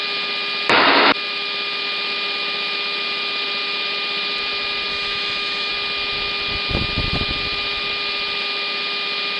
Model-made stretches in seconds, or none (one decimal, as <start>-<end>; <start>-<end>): 4.9-5.7